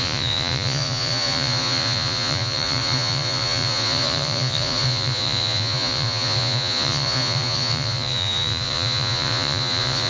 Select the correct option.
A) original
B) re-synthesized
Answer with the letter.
B